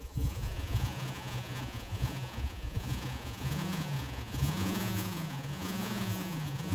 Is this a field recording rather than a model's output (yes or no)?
no